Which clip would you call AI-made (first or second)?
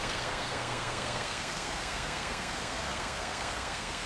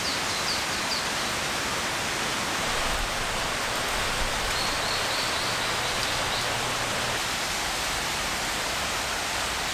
first